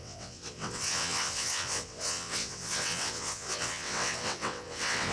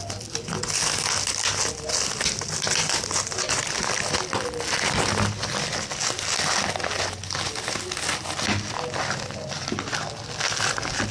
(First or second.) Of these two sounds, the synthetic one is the first